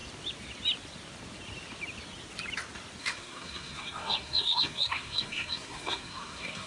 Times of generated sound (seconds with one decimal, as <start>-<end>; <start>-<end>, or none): 3.0-6.7